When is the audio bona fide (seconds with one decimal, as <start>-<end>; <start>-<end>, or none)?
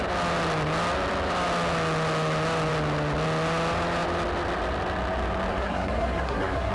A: 0.0-5.5